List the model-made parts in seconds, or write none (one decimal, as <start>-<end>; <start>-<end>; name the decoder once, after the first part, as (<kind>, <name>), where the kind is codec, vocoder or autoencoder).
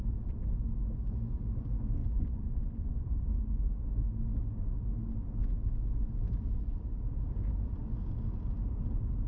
2.0-3.8 (vocoder, Vocos)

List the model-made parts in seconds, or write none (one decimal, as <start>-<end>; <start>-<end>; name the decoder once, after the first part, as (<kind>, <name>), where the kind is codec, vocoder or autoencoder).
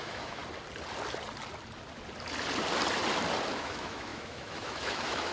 0.0-0.4 (autoencoder, DAC-VAE); 3.6-5.3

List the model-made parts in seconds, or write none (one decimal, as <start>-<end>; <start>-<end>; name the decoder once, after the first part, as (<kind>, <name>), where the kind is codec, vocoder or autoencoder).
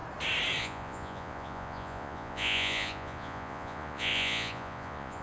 0.6-5.2 (vocoder, Vocos)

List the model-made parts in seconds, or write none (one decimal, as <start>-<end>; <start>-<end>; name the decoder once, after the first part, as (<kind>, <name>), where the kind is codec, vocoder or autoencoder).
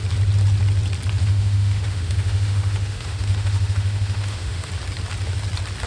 1.2-4.7 (autoencoder, DAC-VAE)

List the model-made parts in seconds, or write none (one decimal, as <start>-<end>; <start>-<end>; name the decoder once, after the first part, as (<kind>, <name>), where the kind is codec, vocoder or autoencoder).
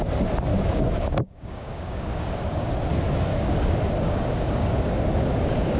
0.5-2.7 (codec, DAC); 3.3-5.8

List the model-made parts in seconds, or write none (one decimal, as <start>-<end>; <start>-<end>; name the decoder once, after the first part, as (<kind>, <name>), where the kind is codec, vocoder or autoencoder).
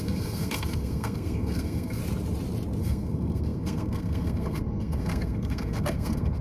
0.0-2.0 (codec, SNAC); 2.8-6.4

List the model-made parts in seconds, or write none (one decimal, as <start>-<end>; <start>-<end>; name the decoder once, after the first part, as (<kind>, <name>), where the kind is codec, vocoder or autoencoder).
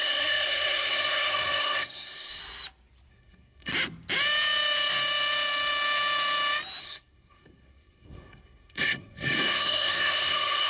0.0-2.4 (codec, SNAC); 3.1-3.7; 6.8-10.7